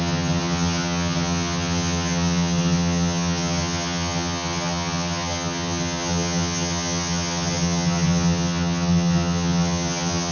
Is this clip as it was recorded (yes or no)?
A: no